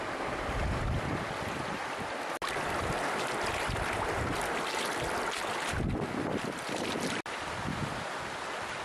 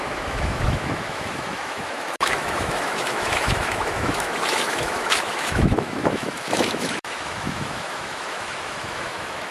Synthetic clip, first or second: second